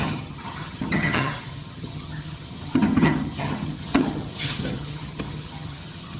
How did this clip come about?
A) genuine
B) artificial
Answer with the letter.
B